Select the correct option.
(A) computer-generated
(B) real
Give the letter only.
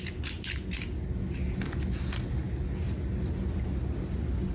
B